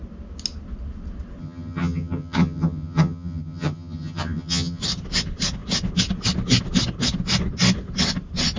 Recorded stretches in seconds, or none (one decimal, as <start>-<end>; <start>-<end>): 0.0-1.4; 4.8-8.6

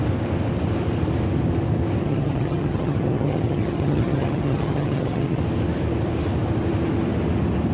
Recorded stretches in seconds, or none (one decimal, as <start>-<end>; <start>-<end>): 0.0-2.0; 5.4-7.7

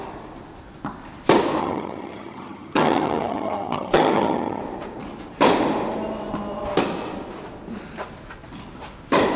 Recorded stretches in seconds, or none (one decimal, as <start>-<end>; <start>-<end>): 0.0-1.6; 4.6-9.4

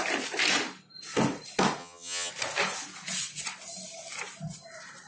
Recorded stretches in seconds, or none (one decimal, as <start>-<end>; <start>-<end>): 0.0-1.8; 2.3-5.1